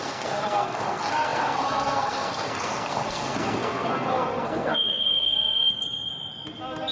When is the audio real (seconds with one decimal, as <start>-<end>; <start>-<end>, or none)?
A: 6.1-6.9